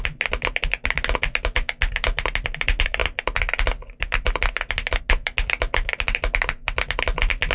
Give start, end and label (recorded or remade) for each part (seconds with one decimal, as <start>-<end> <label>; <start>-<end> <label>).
0.0-7.5 recorded